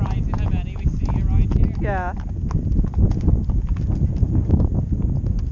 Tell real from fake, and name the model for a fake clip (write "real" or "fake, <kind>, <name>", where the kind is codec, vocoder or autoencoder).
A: real